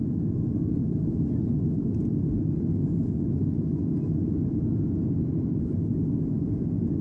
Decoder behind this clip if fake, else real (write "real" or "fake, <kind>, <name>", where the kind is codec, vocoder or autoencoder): real